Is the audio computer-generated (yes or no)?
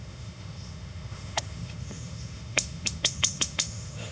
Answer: yes